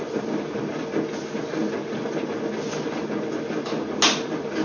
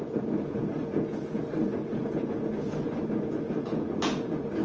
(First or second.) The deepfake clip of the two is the second